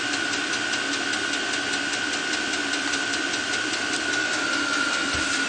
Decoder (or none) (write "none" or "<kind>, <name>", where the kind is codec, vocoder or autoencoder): none